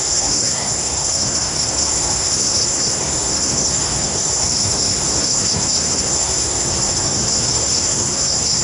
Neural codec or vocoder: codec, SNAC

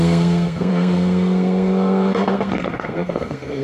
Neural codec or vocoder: codec, SNAC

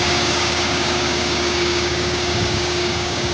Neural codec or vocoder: codec, DAC